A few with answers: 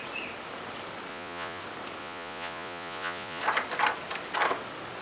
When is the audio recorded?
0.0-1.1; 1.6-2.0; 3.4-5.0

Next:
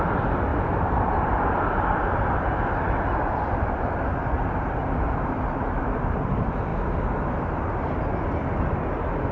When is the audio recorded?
0.0-9.3

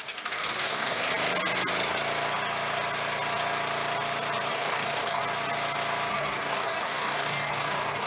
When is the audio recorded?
1.1-4.5; 5.2-6.1

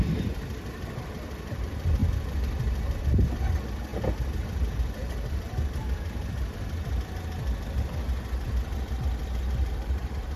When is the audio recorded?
0.0-10.4